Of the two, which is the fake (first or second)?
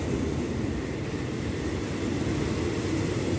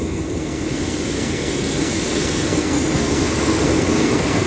second